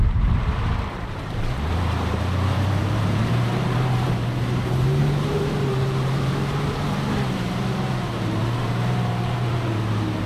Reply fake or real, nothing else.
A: fake